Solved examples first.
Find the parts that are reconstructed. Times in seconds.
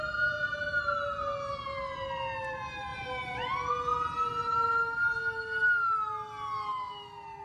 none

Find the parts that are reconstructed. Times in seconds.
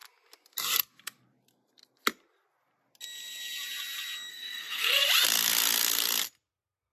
4.3-5.0 (codec, SNAC)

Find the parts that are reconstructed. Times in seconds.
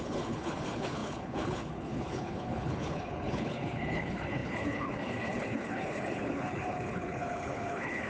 0.0-8.1 (codec, HILCodec)